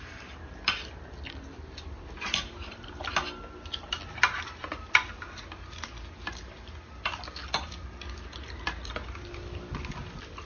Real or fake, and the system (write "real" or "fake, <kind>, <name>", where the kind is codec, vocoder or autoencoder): real